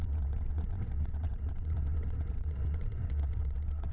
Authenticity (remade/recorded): remade